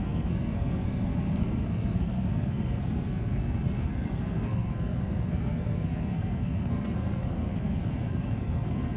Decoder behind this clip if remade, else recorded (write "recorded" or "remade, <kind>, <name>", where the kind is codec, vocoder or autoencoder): remade, codec, SNAC